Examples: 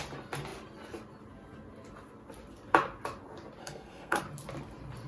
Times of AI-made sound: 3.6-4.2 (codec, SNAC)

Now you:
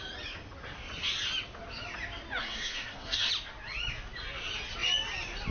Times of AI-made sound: 2.4-3.3 (codec, SNAC)

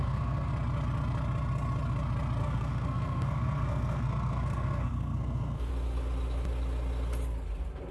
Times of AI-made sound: 0.0-0.5 (codec, SNAC); 2.4-5.7

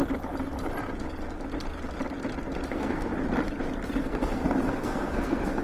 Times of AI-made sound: 2.7-3.1 (codec, SNAC); 4.0-5.6

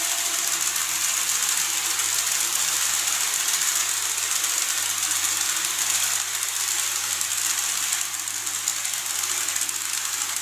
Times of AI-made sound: none

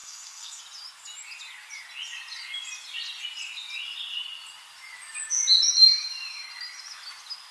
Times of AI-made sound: 0.0-0.6 (codec, SNAC)